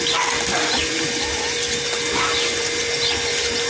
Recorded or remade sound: recorded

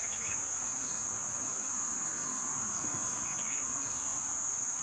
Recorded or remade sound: remade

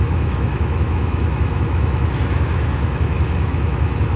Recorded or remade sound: remade